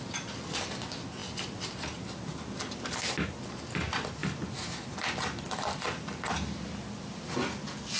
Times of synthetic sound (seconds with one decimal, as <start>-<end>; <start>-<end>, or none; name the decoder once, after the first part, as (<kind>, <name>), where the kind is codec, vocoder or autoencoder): none